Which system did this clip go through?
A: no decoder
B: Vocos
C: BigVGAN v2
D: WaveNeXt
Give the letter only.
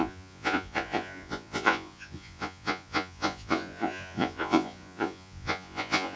B